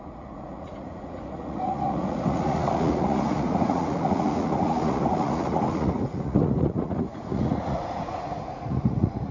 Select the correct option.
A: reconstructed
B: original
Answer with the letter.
A